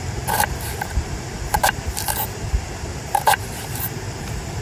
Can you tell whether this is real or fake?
fake